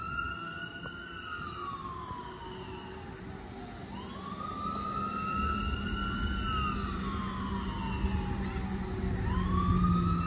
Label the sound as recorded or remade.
recorded